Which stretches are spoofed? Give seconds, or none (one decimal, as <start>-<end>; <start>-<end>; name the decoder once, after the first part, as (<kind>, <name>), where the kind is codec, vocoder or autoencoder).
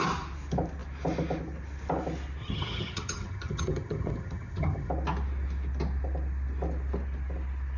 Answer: 2.4-4.9 (vocoder, HiFi-GAN)